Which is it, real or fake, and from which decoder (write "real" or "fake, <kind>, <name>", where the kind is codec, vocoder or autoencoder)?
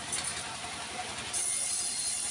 fake, vocoder, BigVGAN v2